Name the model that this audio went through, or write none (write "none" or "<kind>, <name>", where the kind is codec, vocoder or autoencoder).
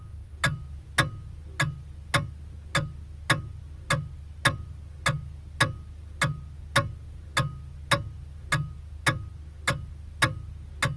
none